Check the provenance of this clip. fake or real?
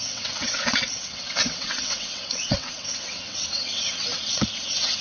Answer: fake